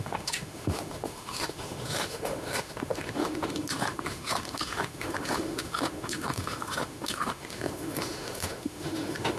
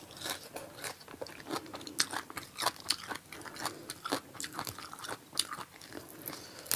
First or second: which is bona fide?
second